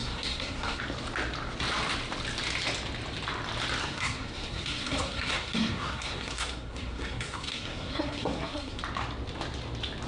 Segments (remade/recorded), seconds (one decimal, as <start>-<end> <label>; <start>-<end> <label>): 0.0-0.8 remade; 0.8-3.8 recorded; 3.8-8.8 remade; 8.8-10.1 recorded